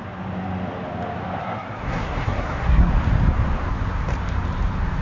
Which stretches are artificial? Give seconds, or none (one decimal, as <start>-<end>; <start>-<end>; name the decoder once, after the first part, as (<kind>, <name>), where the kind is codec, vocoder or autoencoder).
1.4-2.9 (codec, SNAC)